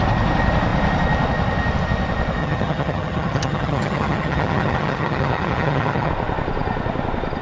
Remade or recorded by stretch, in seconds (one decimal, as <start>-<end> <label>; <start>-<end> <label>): 0.0-2.4 recorded; 2.4-6.1 remade; 6.1-7.4 recorded